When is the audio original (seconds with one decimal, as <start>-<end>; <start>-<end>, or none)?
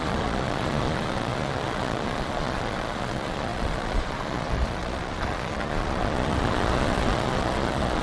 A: none